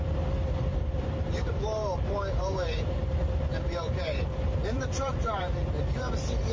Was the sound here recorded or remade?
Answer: remade